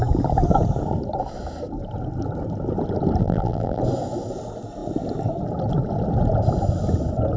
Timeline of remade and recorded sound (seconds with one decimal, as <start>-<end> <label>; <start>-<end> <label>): 0.0-3.2 recorded; 3.2-3.8 remade; 3.8-7.4 recorded